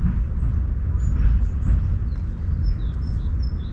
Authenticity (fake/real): real